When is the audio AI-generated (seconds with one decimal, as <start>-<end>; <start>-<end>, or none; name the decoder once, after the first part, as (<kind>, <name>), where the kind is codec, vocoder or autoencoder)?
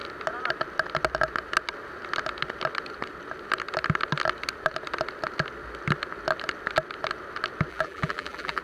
7.7-8.6 (vocoder, BigVGAN v2)